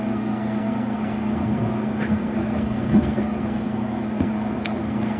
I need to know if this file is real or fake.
fake